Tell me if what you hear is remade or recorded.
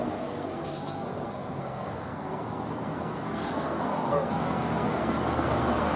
remade